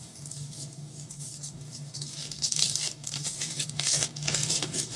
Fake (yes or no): yes